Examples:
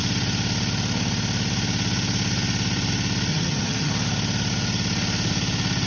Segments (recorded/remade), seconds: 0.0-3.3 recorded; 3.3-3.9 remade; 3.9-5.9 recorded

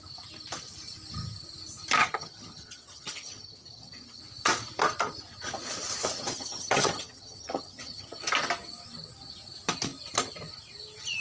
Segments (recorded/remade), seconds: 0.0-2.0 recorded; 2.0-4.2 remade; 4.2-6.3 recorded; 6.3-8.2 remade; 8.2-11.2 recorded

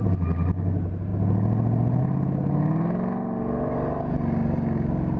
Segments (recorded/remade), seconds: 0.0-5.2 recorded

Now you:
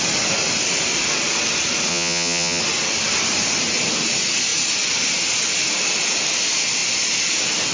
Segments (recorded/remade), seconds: 0.0-1.9 recorded; 1.9-2.6 remade; 2.6-7.7 recorded